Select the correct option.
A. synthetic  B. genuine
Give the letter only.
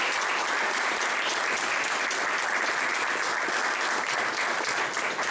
B